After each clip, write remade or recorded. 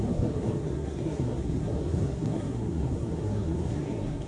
remade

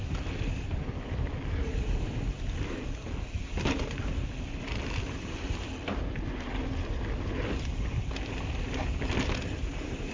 recorded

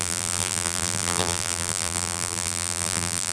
remade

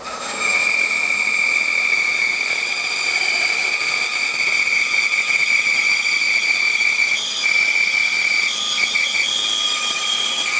recorded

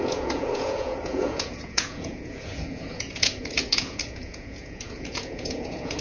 remade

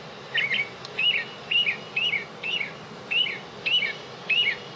recorded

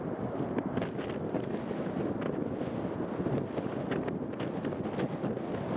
recorded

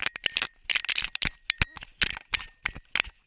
recorded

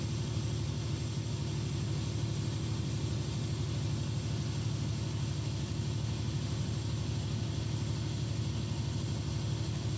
recorded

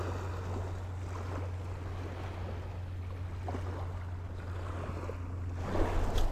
recorded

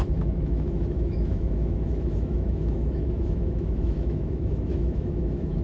remade